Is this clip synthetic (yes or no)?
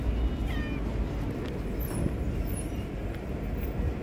no